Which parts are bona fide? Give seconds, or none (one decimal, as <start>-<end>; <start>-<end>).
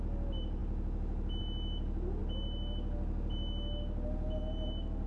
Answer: 0.0-5.1